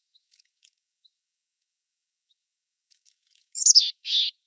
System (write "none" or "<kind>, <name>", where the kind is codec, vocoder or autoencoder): codec, DAC